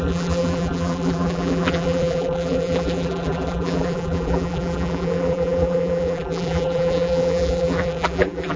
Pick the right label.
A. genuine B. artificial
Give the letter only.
B